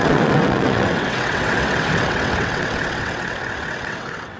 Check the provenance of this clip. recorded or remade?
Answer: remade